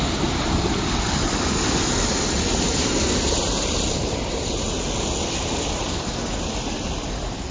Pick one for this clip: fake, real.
real